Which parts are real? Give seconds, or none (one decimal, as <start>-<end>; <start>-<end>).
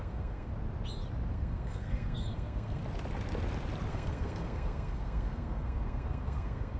0.5-1.3; 2.8-3.9